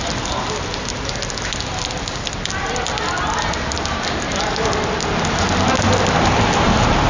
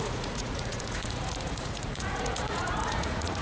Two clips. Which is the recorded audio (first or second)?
first